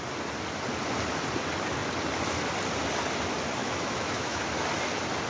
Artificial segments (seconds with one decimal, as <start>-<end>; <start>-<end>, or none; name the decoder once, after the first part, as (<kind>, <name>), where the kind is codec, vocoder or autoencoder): 3.6-4.4 (autoencoder, DAC-VAE)